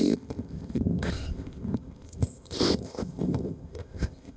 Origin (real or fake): fake